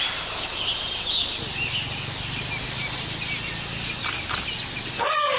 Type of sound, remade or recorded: recorded